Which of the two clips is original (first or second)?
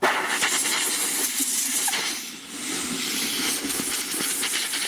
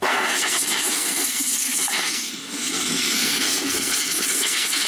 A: first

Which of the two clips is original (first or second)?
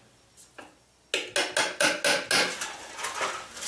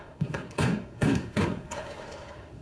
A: first